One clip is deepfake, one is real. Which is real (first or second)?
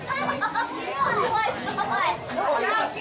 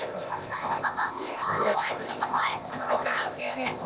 first